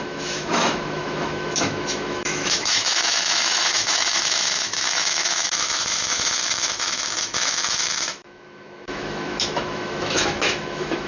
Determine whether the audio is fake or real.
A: fake